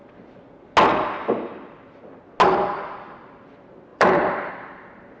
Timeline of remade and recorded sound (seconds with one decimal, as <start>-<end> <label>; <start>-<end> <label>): 0.0-3.9 recorded; 3.9-4.5 remade; 4.5-5.2 recorded